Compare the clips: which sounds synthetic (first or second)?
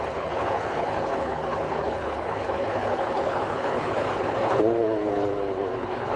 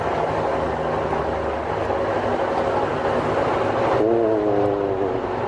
first